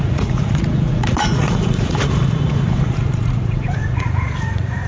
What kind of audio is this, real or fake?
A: fake